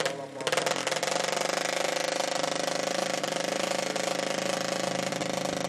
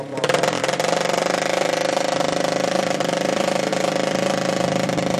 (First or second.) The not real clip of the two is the second